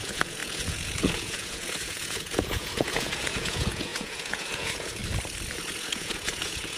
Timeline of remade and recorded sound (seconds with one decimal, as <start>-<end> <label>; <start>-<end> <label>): 0.0-5.0 remade; 5.0-5.5 recorded; 5.5-6.8 remade

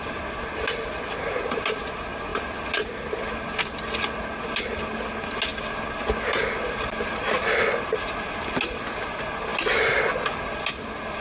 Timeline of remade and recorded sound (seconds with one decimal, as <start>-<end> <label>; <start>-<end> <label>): 0.0-11.2 recorded

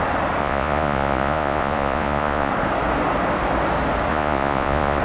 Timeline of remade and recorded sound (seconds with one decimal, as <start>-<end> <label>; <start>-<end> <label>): 0.0-0.4 recorded; 0.4-2.5 remade; 2.5-4.1 recorded; 4.1-5.0 remade

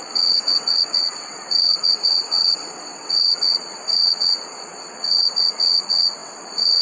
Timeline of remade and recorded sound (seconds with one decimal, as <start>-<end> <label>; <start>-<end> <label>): 0.0-6.8 remade

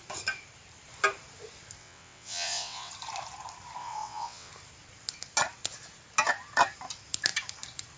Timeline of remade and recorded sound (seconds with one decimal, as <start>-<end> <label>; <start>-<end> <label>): 0.0-1.8 recorded; 1.8-2.9 remade; 2.9-3.8 recorded; 3.8-4.5 remade; 4.5-8.0 recorded